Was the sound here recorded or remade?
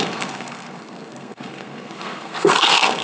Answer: remade